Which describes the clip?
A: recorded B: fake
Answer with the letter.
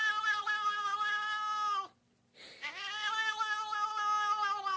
A